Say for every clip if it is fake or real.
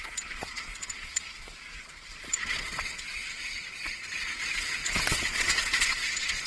fake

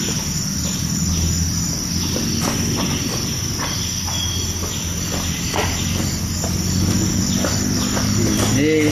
real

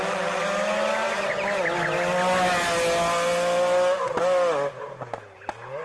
real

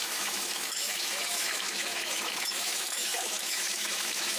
fake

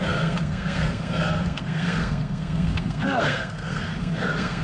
fake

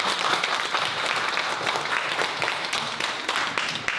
real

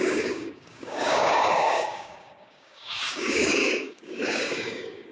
fake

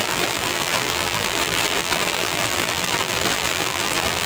fake